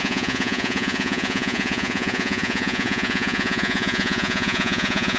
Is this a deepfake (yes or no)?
yes